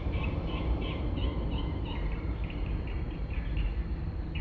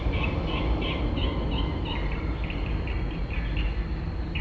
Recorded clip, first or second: second